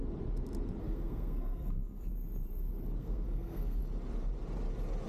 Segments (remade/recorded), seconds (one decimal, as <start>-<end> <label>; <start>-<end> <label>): 0.0-0.8 recorded; 0.8-2.1 remade; 2.1-3.0 recorded; 3.0-3.8 remade; 3.8-5.1 recorded